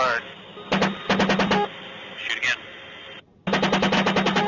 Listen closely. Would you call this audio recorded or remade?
recorded